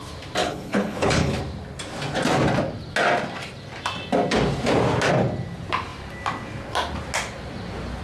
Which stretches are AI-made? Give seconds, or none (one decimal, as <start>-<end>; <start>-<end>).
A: 0.4-1.4